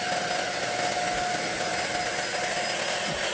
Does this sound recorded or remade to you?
recorded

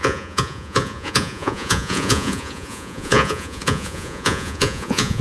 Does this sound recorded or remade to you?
remade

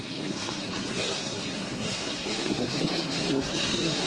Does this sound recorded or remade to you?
remade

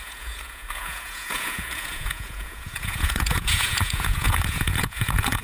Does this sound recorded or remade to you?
remade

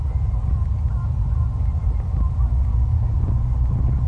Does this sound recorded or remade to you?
recorded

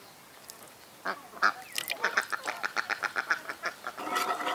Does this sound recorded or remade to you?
recorded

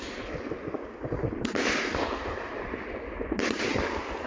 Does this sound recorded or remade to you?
recorded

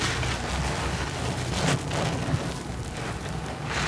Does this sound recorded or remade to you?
recorded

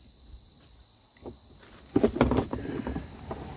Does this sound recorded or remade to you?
recorded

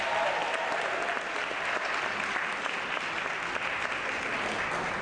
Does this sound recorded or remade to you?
recorded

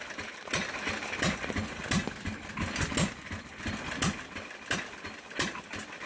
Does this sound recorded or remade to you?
recorded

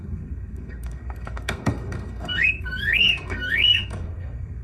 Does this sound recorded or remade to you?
remade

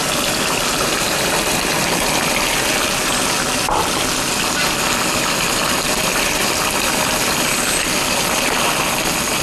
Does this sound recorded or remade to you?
recorded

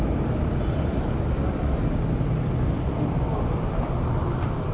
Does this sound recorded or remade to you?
recorded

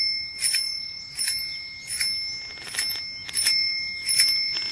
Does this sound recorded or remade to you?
recorded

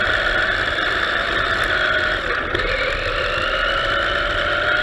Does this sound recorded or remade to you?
recorded